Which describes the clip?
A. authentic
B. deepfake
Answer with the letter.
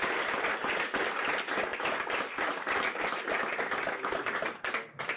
A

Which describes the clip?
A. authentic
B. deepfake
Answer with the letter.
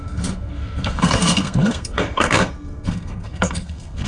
B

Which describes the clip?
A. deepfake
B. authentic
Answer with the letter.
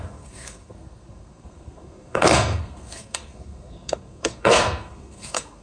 A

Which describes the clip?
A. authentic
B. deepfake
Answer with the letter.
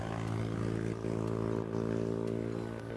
A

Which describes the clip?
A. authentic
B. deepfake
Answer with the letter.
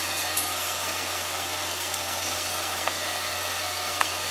B